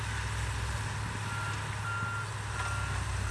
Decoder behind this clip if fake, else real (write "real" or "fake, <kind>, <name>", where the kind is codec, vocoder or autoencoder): real